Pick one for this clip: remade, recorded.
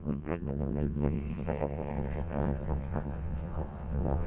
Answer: remade